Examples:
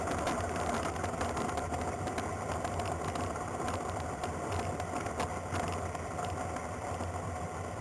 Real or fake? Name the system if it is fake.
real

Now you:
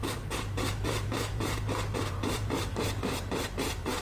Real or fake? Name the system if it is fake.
fake, vocoder, BigVGAN v2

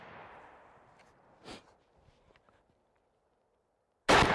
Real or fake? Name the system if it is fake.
real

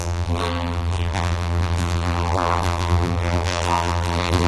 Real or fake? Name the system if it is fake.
fake, vocoder, BigVGAN v2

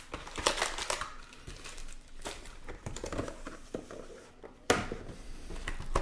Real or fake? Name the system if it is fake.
real